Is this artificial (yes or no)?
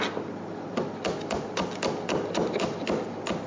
no